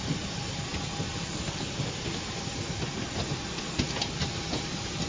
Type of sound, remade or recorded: recorded